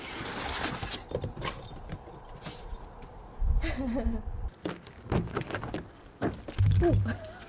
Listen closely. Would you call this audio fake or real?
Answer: real